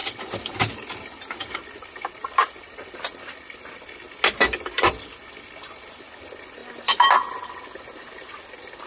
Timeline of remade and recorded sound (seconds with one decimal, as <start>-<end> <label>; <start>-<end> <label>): 0.0-8.9 recorded